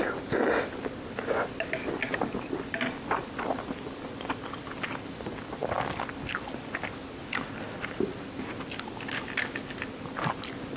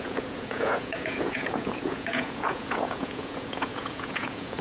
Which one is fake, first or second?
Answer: second